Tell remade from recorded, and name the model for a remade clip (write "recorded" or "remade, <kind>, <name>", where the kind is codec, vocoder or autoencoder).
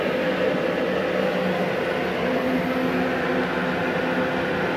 recorded